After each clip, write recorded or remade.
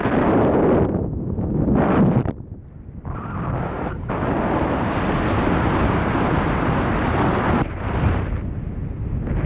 recorded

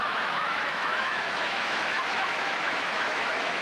remade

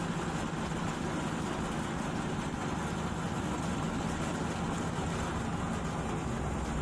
recorded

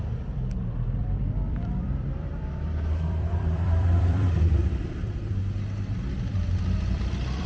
remade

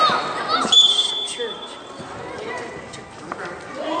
recorded